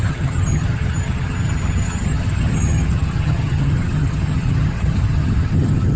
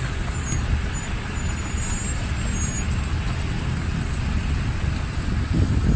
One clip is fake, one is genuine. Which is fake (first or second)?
first